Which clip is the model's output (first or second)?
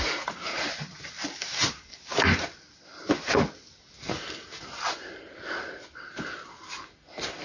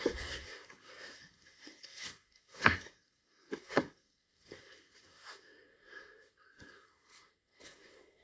second